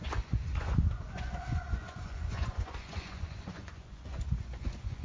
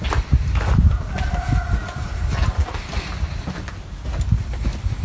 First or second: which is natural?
second